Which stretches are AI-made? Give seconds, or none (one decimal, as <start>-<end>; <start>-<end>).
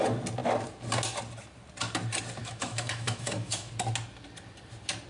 2.4-3.7